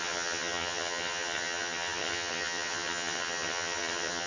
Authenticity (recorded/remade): remade